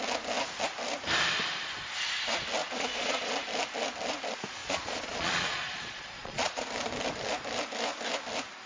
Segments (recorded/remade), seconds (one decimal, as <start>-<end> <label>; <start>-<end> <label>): 0.0-2.6 recorded; 2.6-3.3 remade; 3.3-4.6 recorded; 4.6-6.7 remade; 6.7-8.7 recorded